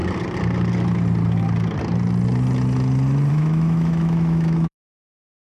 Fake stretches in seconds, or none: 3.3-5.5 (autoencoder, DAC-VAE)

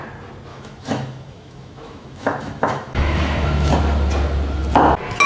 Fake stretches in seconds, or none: 0.5-3.7 (autoencoder, DAC-VAE)

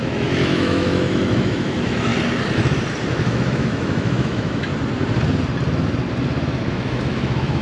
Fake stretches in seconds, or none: 0.0-2.1 (autoencoder, DAC-VAE); 3.1-4.7; 6.7-7.6

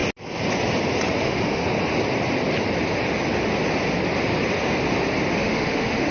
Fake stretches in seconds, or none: 1.2-1.6 (autoencoder, DAC-VAE); 5.3-6.1

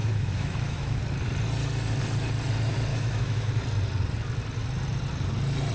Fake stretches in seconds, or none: 0.0-1.0 (autoencoder, DAC-VAE); 2.9-3.5